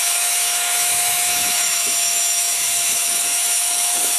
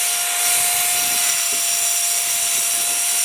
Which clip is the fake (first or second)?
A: first